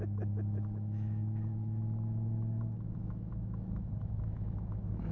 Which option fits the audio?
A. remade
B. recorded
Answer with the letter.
A